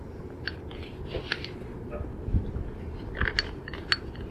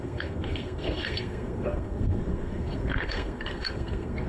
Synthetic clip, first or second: second